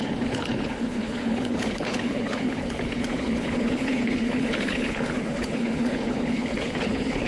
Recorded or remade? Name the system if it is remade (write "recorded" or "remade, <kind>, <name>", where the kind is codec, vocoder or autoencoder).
remade, codec, HILCodec